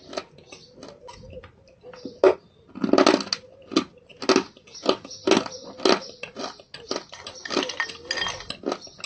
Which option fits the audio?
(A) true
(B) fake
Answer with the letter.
A